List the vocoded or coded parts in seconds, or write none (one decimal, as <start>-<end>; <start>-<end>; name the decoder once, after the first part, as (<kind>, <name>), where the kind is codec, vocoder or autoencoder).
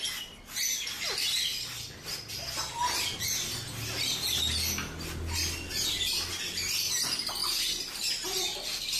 none